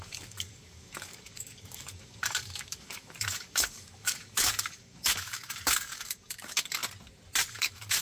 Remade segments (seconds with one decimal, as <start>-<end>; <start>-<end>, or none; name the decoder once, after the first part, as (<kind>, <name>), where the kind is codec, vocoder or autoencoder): 0.0-6.8 (codec, DAC); 7.5-8.0